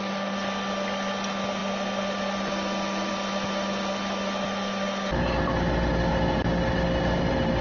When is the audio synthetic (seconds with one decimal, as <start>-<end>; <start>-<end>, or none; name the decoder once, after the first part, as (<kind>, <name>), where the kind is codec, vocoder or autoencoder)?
none